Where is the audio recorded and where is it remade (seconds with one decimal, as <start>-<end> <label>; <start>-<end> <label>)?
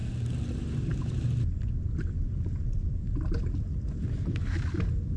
0.0-5.2 recorded